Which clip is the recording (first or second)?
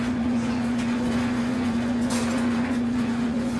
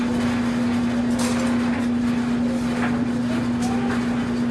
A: second